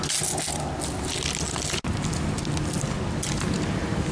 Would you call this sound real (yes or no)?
yes